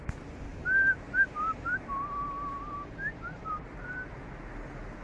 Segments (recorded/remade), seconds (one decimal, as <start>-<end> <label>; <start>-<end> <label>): 0.0-0.5 recorded; 0.5-3.5 remade; 3.5-5.0 recorded